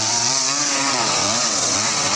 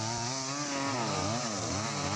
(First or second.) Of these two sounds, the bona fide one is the second